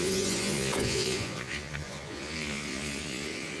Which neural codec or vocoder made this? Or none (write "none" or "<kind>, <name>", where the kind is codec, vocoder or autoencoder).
vocoder, Vocos